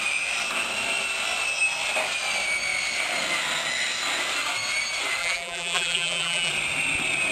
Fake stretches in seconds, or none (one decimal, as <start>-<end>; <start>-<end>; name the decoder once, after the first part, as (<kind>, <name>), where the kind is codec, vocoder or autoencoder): 5.2-6.5 (vocoder, BigVGAN v2)